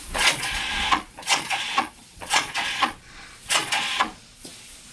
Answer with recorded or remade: remade